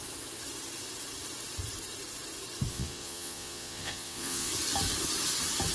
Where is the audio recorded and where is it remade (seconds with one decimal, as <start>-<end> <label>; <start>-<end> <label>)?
0.0-2.7 recorded; 2.7-4.5 remade; 4.5-5.7 recorded